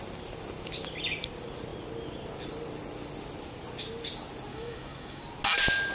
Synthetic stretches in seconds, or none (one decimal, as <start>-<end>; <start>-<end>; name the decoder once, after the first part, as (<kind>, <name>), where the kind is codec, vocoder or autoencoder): 4.5-5.2 (autoencoder, DAC-VAE)